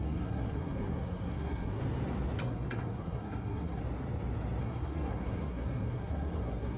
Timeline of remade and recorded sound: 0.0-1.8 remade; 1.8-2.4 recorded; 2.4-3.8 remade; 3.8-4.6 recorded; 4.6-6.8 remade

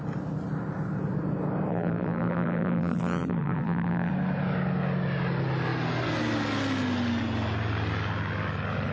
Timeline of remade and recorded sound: 0.0-1.7 recorded; 1.7-4.1 remade; 4.1-8.9 recorded

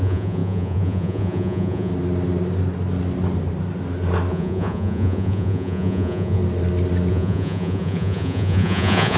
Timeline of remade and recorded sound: 0.0-1.9 remade; 1.9-4.3 recorded; 4.3-6.4 remade; 6.4-7.1 recorded; 7.1-9.2 remade

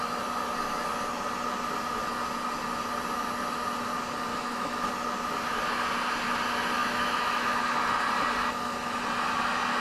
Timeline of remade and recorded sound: 0.0-4.3 recorded; 4.3-4.9 remade; 4.9-6.8 recorded; 6.8-7.9 remade; 7.9-9.8 recorded